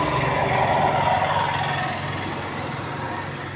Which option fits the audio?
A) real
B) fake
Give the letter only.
A